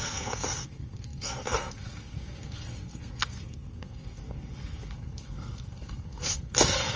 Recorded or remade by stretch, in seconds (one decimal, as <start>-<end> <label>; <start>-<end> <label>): 0.0-7.0 remade